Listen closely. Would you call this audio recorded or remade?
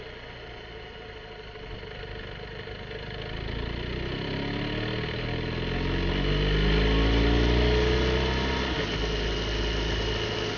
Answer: recorded